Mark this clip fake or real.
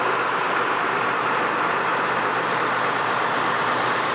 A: real